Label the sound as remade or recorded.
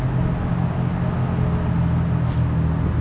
recorded